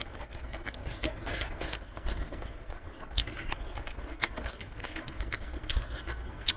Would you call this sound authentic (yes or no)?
no